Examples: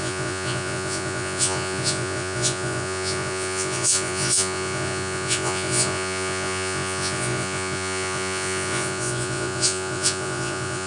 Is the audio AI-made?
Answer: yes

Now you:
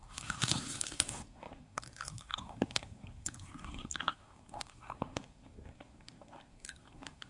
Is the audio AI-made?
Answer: yes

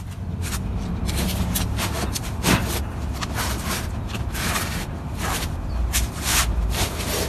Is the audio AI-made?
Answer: yes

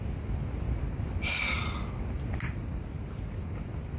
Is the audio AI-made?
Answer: no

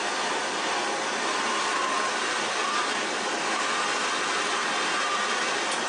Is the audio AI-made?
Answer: no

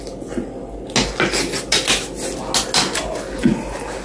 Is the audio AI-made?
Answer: no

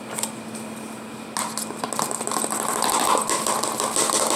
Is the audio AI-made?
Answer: no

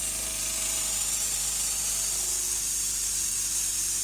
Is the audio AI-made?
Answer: yes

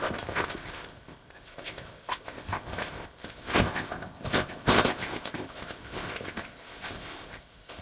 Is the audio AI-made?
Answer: yes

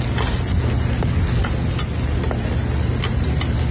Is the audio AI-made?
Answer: no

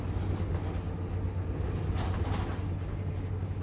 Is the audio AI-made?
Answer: no